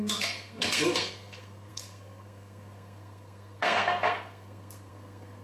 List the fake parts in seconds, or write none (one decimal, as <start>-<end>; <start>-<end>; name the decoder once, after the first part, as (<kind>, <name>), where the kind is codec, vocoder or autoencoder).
0.0-5.4 (codec, SNAC)

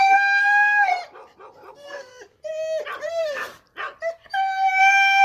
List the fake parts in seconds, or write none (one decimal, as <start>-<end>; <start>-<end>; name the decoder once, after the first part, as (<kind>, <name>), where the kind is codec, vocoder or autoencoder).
0.0-0.9 (codec, SNAC); 1.7-2.1; 3.1-3.5; 4.8-5.2

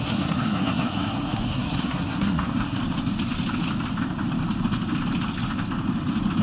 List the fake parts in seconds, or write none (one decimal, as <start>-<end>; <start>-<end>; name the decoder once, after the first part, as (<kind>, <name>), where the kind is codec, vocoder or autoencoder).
0.0-2.8 (codec, SNAC)

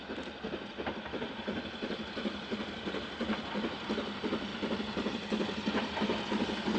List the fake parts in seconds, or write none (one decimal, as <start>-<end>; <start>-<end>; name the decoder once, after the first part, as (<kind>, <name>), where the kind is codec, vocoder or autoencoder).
none

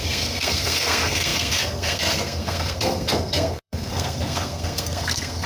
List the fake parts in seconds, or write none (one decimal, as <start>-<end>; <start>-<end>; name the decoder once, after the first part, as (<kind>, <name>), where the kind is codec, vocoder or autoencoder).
0.0-5.5 (codec, SNAC)

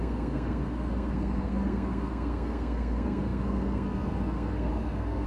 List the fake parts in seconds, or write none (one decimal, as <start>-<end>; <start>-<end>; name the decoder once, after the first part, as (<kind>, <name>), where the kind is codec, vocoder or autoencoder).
0.0-5.3 (codec, SNAC)

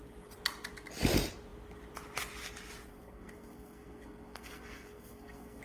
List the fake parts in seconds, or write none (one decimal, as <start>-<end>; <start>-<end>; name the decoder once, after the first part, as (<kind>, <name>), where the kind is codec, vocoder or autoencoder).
2.9-5.6 (codec, SNAC)